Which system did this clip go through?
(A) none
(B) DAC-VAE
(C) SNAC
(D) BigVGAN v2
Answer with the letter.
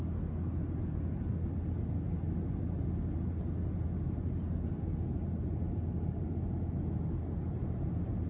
A